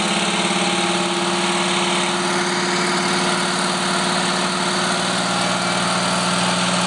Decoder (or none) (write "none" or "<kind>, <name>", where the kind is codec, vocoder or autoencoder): none